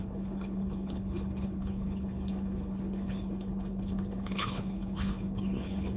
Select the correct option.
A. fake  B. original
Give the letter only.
A